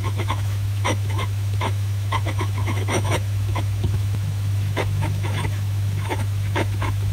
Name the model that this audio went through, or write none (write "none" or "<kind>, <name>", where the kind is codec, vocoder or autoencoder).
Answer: autoencoder, DAC-VAE